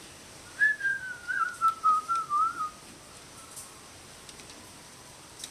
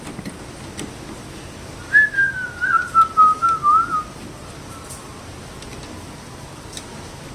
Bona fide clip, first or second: second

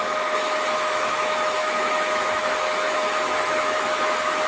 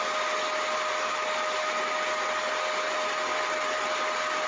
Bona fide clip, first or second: second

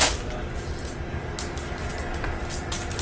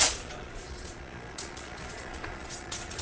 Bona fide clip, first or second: first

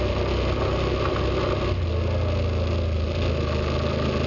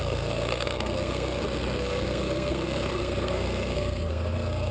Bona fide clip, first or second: first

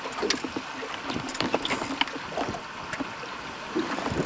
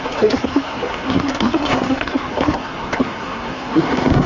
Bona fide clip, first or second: first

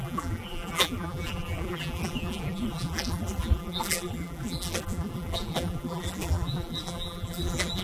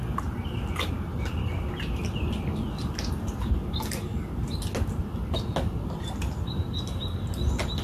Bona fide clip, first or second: second